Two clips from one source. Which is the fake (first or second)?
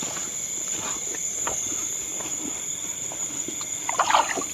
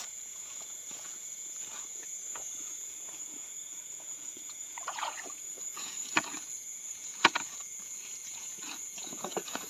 second